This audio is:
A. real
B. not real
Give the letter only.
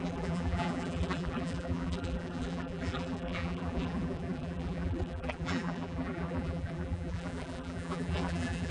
B